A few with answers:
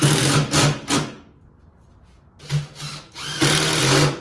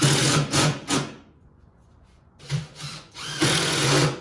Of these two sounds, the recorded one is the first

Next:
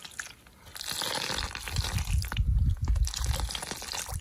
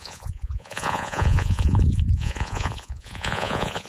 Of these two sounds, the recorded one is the first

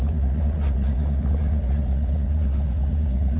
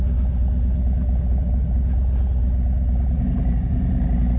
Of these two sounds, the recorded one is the second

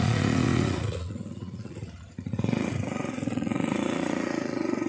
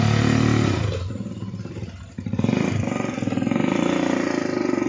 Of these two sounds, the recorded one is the second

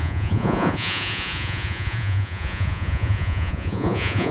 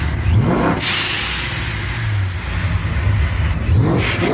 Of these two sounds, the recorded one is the second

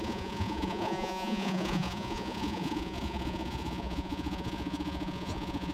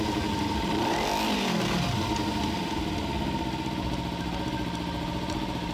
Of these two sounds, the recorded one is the second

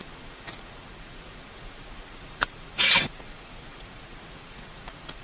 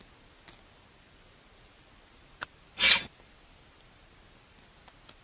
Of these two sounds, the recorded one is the second